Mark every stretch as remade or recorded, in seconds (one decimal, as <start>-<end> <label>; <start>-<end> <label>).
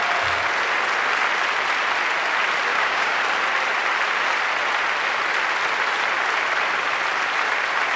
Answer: 0.0-2.7 recorded; 2.7-3.2 remade; 3.2-8.0 recorded